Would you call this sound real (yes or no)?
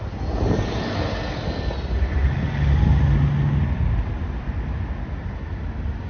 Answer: yes